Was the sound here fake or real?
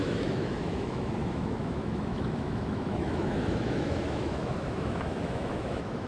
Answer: fake